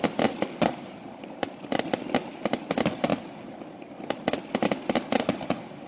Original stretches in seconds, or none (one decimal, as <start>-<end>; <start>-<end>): 0.0-5.9